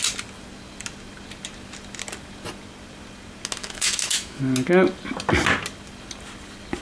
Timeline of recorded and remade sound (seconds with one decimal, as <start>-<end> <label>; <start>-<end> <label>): 0.0-3.6 recorded; 3.6-4.4 remade; 4.4-6.8 recorded